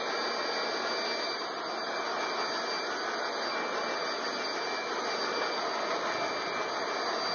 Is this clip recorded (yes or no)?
yes